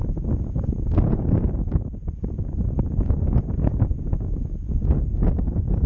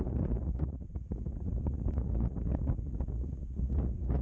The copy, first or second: second